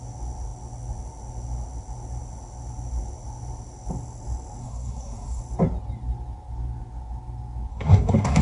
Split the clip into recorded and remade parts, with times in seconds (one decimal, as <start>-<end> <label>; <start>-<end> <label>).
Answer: 0.0-4.6 recorded; 4.6-5.4 remade; 5.4-7.7 recorded; 7.7-8.4 remade